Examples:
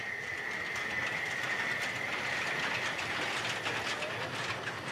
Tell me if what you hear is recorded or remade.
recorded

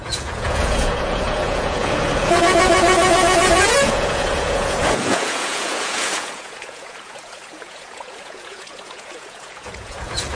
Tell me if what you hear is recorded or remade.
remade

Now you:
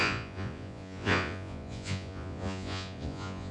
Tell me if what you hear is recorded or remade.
remade